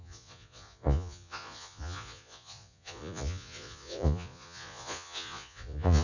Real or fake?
fake